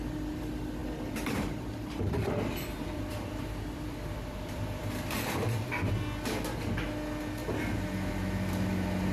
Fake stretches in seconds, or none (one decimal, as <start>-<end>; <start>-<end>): 0.8-5.7